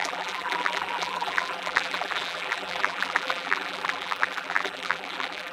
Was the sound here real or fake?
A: fake